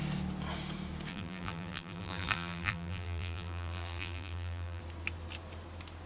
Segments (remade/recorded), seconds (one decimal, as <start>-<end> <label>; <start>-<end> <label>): 0.0-1.1 recorded; 1.1-4.8 remade; 4.8-6.1 recorded

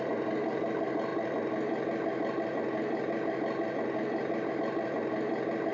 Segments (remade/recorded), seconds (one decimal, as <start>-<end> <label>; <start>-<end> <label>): 0.0-5.7 recorded

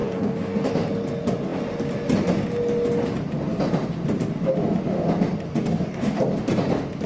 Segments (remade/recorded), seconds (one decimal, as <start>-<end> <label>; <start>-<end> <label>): 0.0-0.7 remade; 0.7-5.5 recorded; 5.5-6.2 remade; 6.2-7.1 recorded

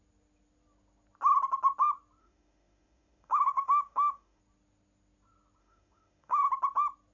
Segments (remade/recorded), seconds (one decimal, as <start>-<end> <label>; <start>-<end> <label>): 0.0-2.2 recorded; 2.2-4.4 remade; 4.4-5.6 recorded; 5.6-6.5 remade; 6.5-7.1 recorded

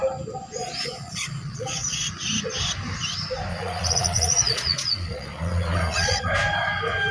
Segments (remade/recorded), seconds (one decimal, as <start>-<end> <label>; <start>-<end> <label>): 0.0-0.6 recorded; 0.6-2.1 remade; 2.1-3.5 recorded; 3.5-6.3 remade; 6.3-7.1 recorded

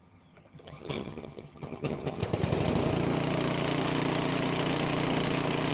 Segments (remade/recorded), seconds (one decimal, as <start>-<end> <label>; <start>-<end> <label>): 0.0-2.2 remade; 2.2-5.7 recorded

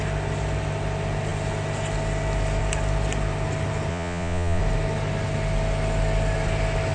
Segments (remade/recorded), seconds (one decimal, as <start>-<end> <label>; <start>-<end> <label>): 0.0-3.9 recorded; 3.9-4.6 remade; 4.6-6.9 recorded